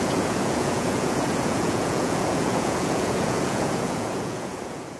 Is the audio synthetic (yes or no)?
yes